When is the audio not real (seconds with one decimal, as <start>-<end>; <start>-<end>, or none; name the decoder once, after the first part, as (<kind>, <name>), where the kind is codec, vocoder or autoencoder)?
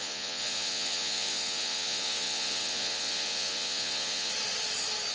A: 0.0-4.3 (vocoder, Vocos)